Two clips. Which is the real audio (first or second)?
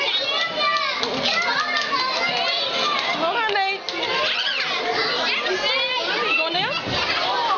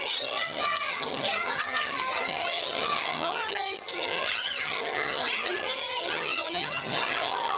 first